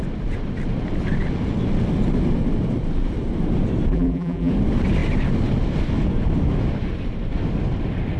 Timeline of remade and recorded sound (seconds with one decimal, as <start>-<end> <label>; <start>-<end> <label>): 0.0-3.9 recorded; 3.9-4.5 remade; 4.5-8.2 recorded